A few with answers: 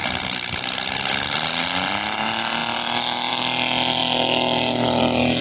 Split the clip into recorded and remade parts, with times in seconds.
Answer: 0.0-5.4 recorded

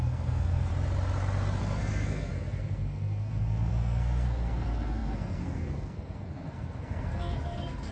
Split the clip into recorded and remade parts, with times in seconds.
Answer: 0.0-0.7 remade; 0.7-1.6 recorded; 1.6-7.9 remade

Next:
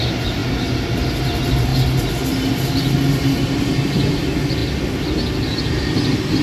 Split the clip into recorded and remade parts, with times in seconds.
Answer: 0.0-6.4 recorded